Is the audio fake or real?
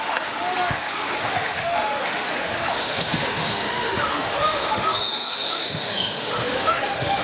fake